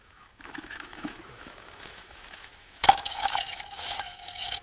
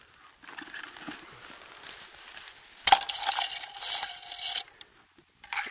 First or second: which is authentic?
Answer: second